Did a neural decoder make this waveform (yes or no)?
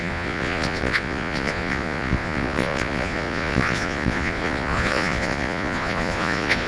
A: yes